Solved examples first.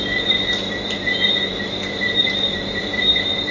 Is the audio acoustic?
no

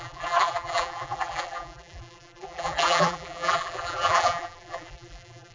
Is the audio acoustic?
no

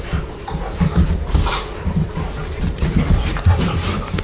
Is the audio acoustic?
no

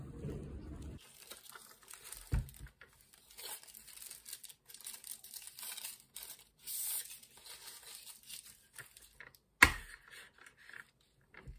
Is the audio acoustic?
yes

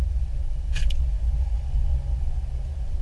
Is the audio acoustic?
yes